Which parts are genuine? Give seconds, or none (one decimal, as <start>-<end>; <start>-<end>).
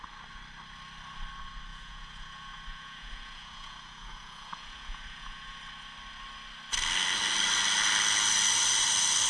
0.0-1.7; 5.6-9.3